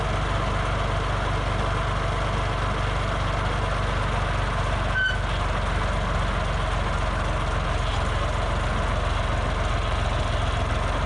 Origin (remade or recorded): recorded